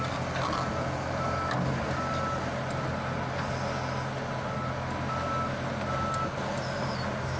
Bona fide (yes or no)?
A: yes